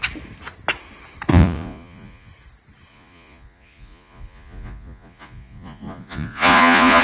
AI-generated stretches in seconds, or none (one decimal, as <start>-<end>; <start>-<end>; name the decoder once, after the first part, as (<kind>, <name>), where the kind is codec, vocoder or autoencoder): 1.3-2.3 (vocoder, Vocos); 2.9-7.0